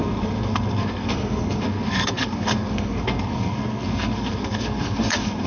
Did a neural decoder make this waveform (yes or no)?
yes